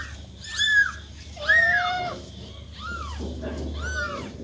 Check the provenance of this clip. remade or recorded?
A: recorded